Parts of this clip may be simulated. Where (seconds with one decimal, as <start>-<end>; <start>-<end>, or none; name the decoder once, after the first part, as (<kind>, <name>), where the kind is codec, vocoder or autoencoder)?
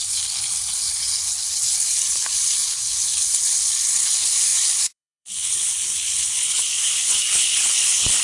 0.0-8.2 (codec, HILCodec)